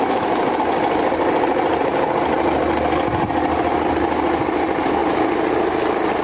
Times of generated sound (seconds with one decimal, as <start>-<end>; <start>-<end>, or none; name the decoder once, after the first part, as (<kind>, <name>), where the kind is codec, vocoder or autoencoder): none